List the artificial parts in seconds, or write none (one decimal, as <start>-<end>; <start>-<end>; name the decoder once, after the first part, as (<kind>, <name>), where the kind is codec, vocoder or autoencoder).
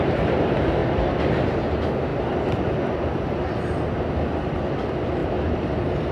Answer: none